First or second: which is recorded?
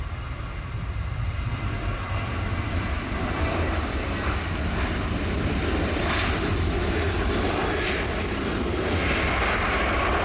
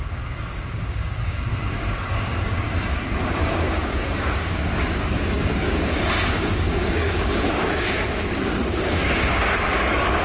first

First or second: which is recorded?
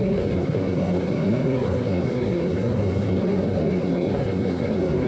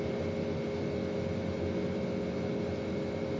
second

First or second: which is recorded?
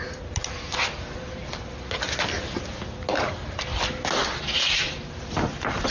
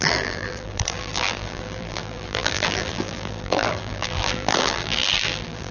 first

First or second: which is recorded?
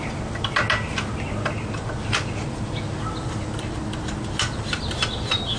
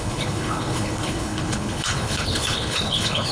first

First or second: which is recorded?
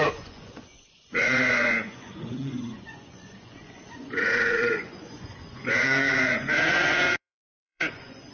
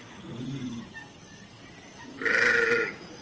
second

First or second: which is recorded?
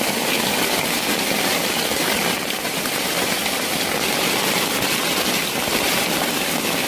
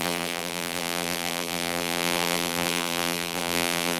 first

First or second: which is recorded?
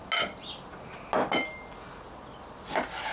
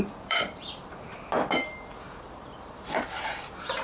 first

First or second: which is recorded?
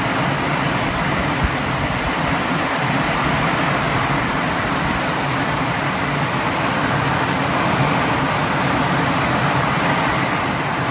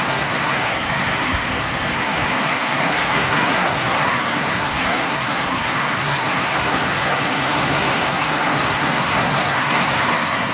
first